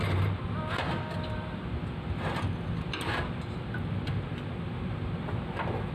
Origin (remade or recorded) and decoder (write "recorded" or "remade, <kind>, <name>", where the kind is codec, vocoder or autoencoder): recorded